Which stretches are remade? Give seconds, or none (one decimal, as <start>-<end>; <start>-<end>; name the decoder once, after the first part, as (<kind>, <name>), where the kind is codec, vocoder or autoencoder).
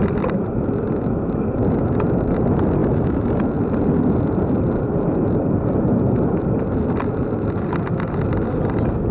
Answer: 2.8-3.4 (autoencoder, DAC-VAE)